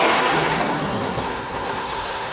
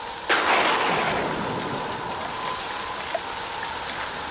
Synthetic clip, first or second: first